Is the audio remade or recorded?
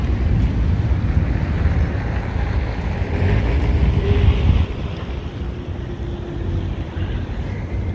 recorded